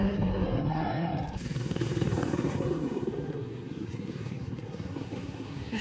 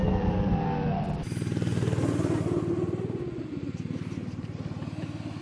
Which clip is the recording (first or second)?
second